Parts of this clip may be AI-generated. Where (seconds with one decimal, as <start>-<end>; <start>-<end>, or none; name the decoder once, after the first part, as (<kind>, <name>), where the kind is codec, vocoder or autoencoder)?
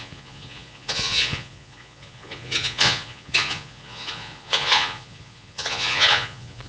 0.0-6.7 (vocoder, Vocos)